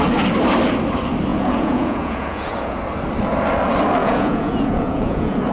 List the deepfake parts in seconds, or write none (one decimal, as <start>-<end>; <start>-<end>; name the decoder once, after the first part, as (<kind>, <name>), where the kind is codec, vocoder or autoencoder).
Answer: 1.3-2.8 (vocoder, Vocos); 4.0-5.5